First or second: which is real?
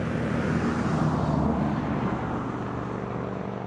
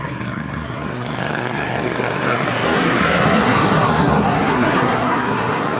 first